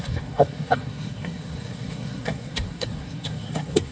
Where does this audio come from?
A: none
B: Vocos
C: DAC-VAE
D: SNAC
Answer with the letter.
D